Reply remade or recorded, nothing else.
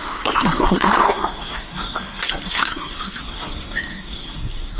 remade